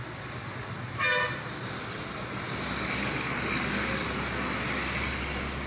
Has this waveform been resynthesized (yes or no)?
no